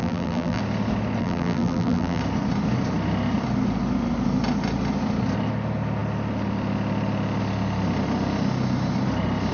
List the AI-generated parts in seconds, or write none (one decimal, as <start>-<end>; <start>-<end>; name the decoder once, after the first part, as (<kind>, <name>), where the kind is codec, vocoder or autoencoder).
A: 0.0-0.6 (vocoder, BigVGAN v2); 1.2-2.2